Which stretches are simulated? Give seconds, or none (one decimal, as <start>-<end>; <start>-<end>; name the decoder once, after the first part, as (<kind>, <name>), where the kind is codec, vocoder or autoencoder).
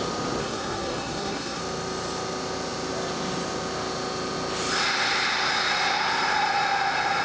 0.4-1.6 (codec, SNAC)